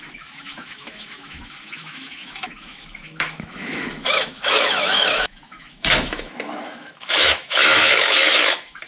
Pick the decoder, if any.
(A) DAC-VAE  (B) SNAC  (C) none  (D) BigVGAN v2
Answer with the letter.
A